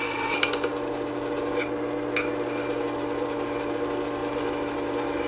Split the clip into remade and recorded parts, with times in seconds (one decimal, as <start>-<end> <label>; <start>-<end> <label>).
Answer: 0.0-5.3 recorded